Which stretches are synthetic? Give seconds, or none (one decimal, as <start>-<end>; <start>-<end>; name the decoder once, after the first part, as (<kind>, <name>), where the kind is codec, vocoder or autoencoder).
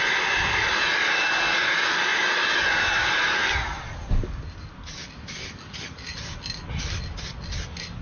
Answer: none